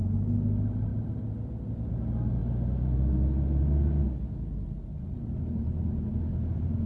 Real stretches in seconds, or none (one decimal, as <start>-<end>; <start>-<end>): 0.0-6.9

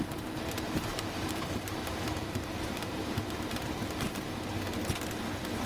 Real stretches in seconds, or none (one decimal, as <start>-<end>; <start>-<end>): 0.0-0.9; 4.2-5.7

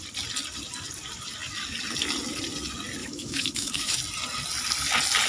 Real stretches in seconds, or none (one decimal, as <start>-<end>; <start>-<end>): 0.0-3.0; 4.0-5.3

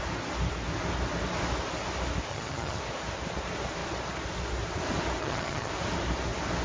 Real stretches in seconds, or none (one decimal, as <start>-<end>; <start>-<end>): 0.0-2.3; 2.8-5.2; 5.7-6.6